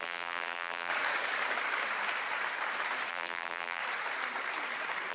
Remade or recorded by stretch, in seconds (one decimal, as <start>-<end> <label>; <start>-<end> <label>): 0.0-0.9 remade; 0.9-3.1 recorded; 3.1-3.8 remade; 3.8-5.1 recorded

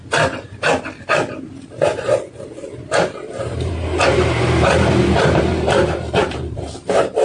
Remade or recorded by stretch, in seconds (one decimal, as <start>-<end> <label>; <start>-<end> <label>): 0.0-0.7 remade; 0.7-1.3 recorded; 1.3-7.2 remade

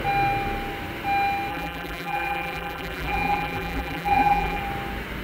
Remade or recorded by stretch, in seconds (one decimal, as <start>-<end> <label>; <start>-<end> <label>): 0.0-1.5 recorded; 1.5-4.6 remade; 4.6-5.2 recorded

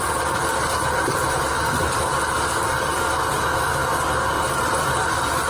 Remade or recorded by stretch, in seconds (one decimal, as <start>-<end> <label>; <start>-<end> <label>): 0.0-0.5 recorded; 0.5-1.5 remade; 1.5-5.5 recorded

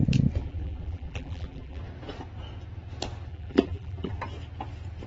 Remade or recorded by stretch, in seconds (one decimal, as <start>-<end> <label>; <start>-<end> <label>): 0.0-0.4 recorded; 0.4-1.8 remade; 1.8-3.3 recorded; 3.3-4.2 remade; 4.2-5.1 recorded

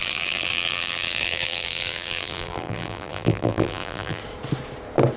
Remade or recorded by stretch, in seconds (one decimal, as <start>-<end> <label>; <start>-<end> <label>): 0.0-4.2 remade; 4.2-5.2 recorded